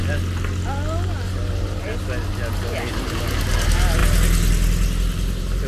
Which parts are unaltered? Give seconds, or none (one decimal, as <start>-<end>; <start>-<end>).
0.0-5.7